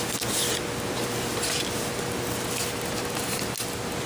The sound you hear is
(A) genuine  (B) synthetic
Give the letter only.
A